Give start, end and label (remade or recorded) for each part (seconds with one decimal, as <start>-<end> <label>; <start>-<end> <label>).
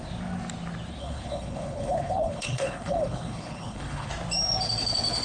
0.0-1.0 recorded; 1.0-4.1 remade; 4.1-5.2 recorded